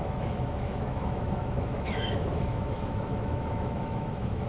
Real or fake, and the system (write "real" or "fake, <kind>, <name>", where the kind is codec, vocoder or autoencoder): fake, autoencoder, DAC-VAE